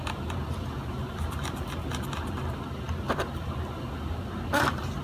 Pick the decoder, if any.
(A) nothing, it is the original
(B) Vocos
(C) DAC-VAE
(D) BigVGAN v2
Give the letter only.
A